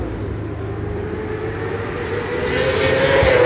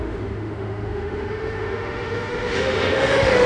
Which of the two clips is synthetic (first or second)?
second